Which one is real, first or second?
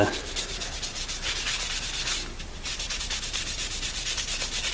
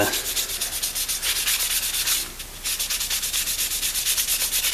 second